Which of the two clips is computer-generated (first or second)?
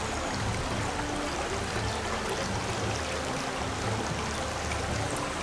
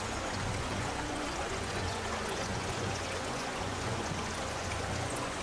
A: second